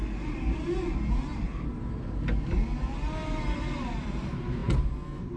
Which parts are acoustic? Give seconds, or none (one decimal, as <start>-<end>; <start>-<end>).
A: 0.0-5.4